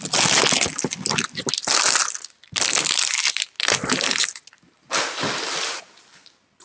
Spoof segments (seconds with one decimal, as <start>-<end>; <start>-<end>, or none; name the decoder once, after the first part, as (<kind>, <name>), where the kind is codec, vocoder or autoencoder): none